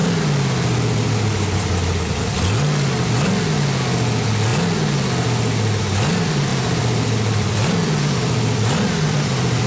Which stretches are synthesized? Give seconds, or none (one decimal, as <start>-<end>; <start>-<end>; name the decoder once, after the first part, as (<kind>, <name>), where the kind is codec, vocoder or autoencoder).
6.5-9.7 (vocoder, BigVGAN v2)